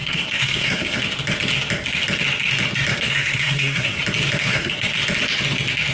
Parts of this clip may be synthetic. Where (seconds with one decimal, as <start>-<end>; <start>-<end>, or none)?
0.0-1.0; 2.9-4.0; 4.4-4.9